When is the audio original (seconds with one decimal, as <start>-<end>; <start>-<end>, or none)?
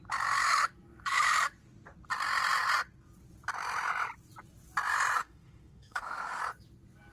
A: 0.0-5.2; 6.4-7.1